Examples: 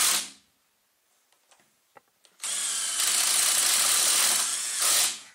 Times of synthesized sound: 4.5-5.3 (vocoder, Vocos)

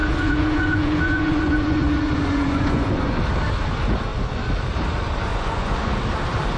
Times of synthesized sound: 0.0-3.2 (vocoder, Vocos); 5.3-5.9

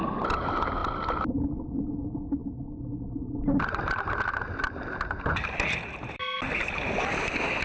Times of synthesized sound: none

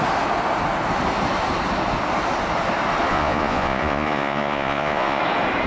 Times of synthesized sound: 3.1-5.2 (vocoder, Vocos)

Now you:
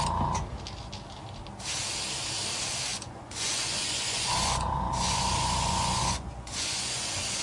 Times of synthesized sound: 2.9-7.4 (vocoder, Vocos)

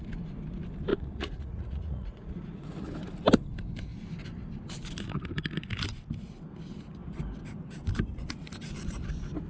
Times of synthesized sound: 0.9-2.9 (vocoder, Vocos)

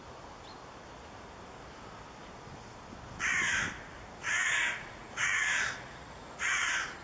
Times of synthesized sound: 4.2-6.6 (vocoder, Vocos)

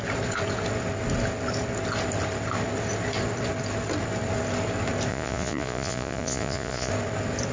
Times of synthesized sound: 5.1-6.9 (vocoder, Vocos)